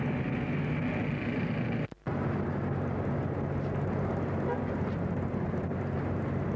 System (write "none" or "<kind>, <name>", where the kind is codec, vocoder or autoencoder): none